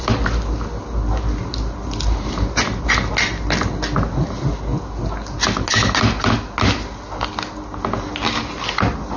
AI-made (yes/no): no